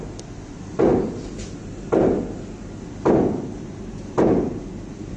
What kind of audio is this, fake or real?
real